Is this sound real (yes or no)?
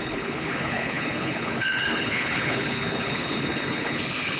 no